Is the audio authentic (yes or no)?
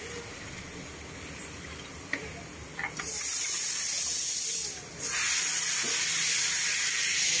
yes